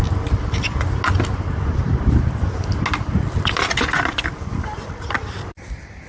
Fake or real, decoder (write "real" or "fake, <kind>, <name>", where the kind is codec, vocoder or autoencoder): real